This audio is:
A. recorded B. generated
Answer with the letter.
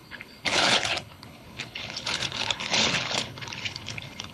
B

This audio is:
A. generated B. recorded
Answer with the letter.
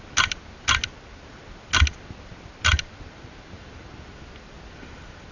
B